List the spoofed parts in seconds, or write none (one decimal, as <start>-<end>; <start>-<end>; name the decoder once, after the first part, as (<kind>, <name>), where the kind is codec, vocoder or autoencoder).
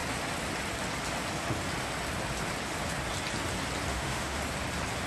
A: 3.9-4.4 (autoencoder, DAC-VAE)